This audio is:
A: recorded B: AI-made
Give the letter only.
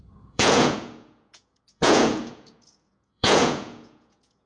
B